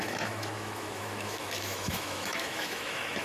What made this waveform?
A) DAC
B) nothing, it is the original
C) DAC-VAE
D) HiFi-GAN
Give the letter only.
C